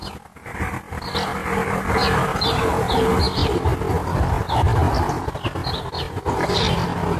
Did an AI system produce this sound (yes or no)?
no